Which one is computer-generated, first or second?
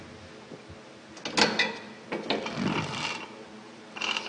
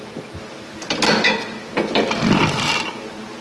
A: second